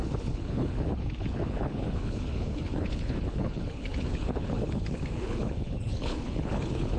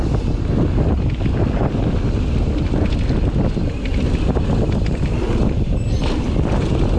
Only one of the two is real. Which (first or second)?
second